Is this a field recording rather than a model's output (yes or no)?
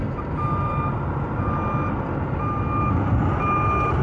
yes